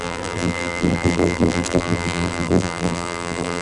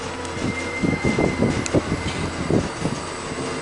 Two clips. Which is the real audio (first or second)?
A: second